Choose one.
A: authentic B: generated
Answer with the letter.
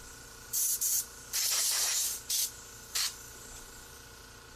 B